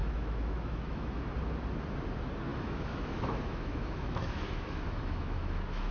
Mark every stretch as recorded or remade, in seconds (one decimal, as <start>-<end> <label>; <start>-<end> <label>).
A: 0.0-1.2 remade; 1.2-2.5 recorded; 2.5-5.9 remade